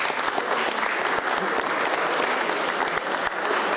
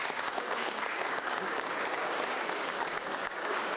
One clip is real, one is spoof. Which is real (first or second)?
first